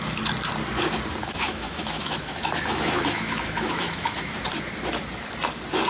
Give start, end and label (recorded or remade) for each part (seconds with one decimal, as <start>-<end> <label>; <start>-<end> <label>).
0.0-1.2 recorded; 1.2-4.4 remade; 4.4-5.9 recorded